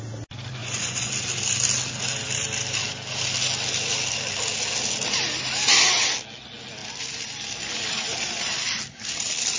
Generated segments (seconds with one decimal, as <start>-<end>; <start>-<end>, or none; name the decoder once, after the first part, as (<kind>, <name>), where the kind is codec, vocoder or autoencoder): 0.6-1.1 (vocoder, Vocos)